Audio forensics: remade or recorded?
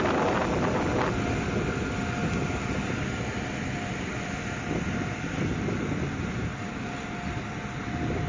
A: recorded